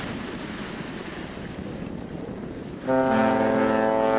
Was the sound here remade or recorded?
recorded